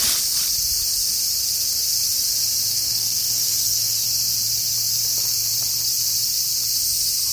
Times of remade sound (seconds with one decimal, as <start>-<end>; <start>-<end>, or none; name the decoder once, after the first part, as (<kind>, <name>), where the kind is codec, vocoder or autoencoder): 2.7-4.1 (codec, SNAC)